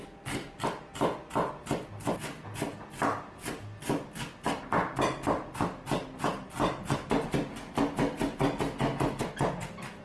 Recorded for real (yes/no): yes